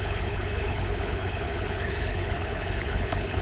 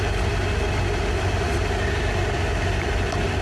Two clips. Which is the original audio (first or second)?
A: second